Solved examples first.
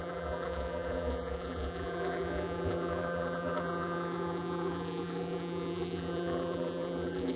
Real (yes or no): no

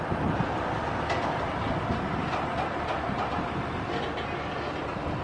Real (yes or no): yes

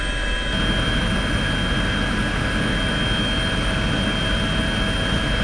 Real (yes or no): yes